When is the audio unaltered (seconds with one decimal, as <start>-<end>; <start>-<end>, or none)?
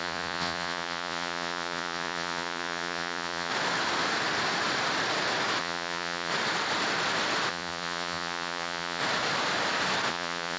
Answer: 3.5-5.6; 6.3-7.5; 9.0-10.1